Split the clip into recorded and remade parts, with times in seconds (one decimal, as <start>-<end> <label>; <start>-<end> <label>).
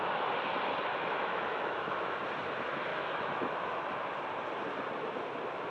0.0-0.9 recorded; 0.9-2.2 remade; 2.2-2.9 recorded; 2.9-4.0 remade; 4.0-5.7 recorded